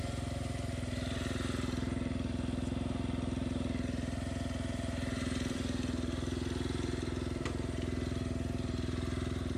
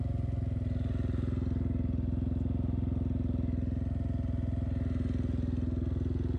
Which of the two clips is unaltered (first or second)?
second